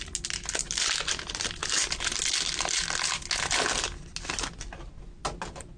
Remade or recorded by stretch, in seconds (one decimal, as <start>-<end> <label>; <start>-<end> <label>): 0.0-5.8 recorded